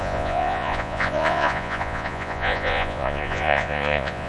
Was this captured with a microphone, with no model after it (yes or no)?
no